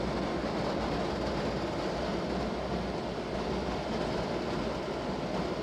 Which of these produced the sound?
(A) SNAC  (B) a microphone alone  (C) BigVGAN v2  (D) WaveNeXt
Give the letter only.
B